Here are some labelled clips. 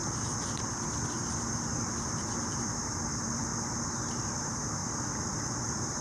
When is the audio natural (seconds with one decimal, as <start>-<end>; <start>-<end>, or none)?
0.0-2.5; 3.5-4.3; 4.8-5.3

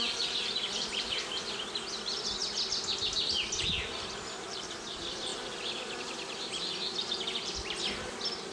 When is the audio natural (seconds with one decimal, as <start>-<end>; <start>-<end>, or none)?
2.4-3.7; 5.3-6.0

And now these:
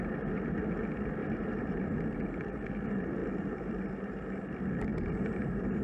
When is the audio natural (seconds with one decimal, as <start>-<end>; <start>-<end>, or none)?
0.0-1.2; 2.0-3.2; 4.5-4.9

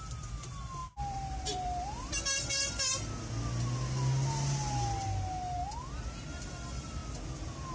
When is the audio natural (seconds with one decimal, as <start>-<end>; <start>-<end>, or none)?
0.0-0.8; 2.2-7.0

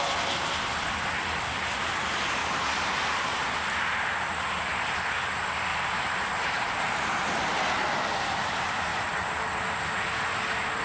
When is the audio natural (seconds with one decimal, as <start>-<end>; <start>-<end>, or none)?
0.0-5.7; 7.7-8.9; 9.4-10.8